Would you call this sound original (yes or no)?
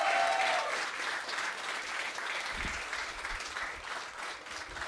yes